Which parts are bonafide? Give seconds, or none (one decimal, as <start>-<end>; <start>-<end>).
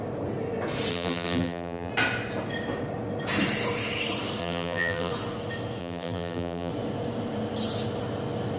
0.0-0.9; 1.9-4.4; 5.1-5.8; 6.7-8.6